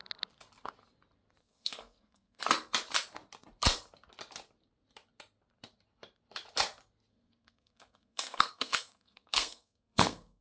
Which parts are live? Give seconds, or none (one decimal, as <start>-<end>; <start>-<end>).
0.0-1.4; 2.4-7.1